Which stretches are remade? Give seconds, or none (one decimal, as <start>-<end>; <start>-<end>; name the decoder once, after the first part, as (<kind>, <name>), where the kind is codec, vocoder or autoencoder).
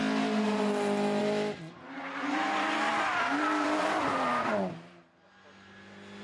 1.2-4.7 (vocoder, BigVGAN v2)